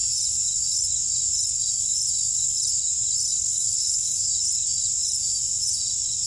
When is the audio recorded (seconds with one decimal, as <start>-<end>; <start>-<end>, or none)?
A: 0.0-3.3; 4.3-6.3